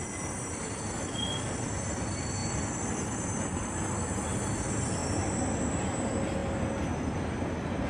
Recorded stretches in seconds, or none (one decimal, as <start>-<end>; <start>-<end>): 0.0-7.9